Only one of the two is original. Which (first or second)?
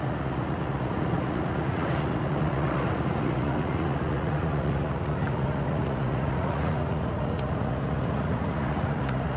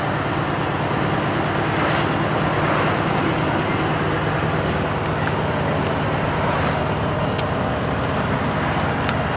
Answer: second